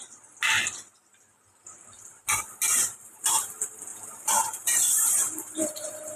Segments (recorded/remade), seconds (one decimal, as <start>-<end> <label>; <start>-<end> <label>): 0.0-2.7 recorded; 2.7-3.5 remade; 3.5-3.9 recorded; 3.9-6.2 remade